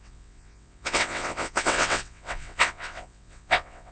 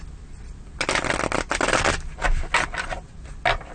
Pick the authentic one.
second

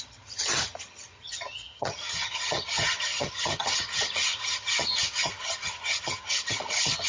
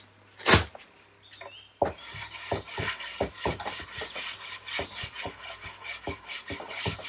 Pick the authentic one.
second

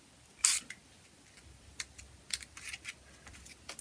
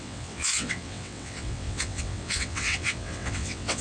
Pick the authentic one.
first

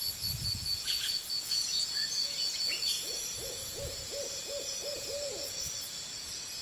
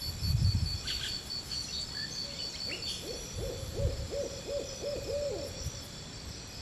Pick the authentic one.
second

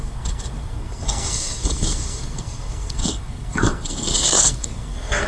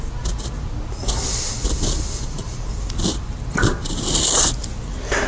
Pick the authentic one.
second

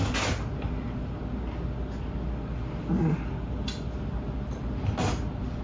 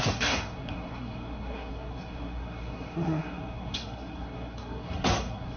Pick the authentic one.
first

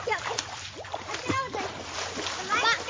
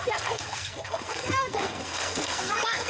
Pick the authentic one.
first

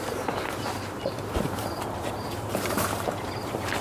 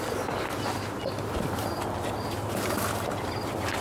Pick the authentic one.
second